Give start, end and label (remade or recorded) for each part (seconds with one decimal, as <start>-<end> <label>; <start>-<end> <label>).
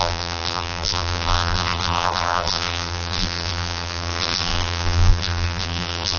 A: 0.0-6.2 remade